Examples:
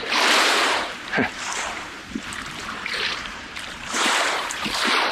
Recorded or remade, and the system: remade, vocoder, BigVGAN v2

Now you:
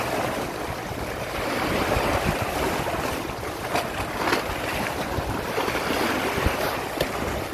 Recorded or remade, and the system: recorded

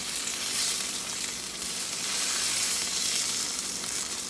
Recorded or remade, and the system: remade, vocoder, BigVGAN v2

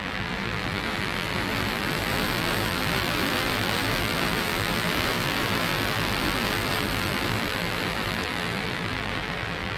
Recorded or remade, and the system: remade, vocoder, BigVGAN v2